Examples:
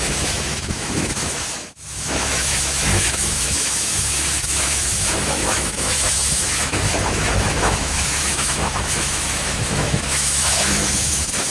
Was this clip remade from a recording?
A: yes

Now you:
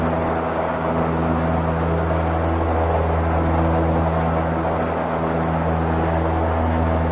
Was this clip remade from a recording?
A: no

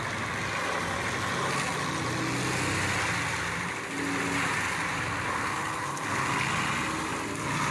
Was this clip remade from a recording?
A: no